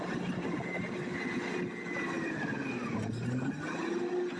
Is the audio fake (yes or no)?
no